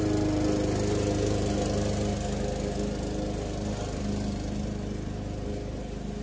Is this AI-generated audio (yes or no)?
no